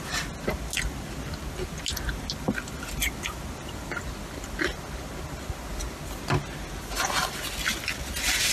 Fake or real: real